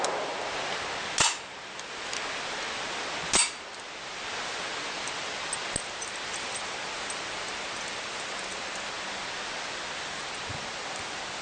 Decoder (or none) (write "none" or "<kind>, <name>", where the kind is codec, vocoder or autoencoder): none